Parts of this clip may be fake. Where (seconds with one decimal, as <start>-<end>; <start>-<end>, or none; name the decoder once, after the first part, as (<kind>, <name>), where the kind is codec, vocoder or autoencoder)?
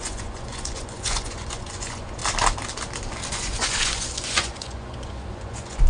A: 0.0-2.2 (vocoder, Vocos); 3.3-5.9